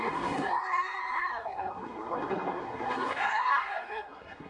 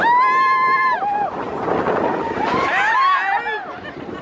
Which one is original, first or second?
second